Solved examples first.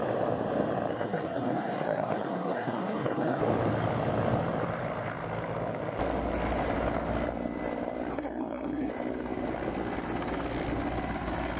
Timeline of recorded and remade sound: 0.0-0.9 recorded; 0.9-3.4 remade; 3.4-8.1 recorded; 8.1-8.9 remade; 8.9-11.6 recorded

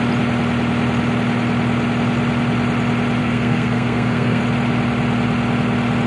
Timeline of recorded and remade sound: 0.0-3.2 recorded; 3.2-4.4 remade; 4.4-6.1 recorded

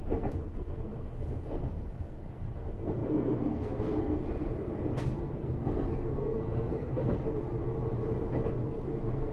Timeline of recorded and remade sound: 0.0-7.5 remade; 7.5-8.5 recorded; 8.5-9.3 remade

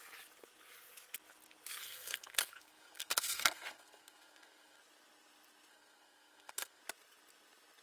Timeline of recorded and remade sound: 0.0-1.8 recorded; 1.8-4.8 remade; 4.8-5.7 recorded; 5.7-6.8 remade; 6.8-7.8 recorded

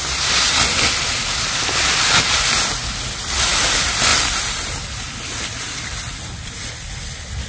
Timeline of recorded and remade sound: 0.0-7.5 recorded

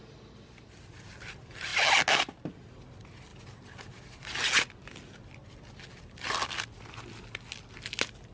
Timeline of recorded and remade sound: 0.0-8.3 recorded

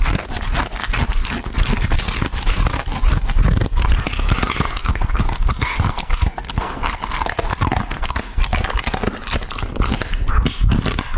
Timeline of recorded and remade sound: 0.0-4.8 recorded; 4.8-7.3 remade; 7.3-7.9 recorded; 7.9-8.4 remade; 8.4-11.2 recorded

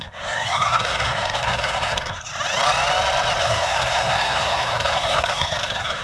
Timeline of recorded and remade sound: 0.0-2.3 remade; 2.3-3.4 recorded; 3.4-6.0 remade